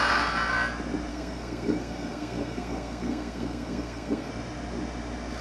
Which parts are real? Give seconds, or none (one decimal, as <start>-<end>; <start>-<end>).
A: 0.0-1.1; 4.3-5.4